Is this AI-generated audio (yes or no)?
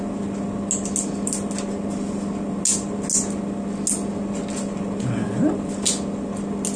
no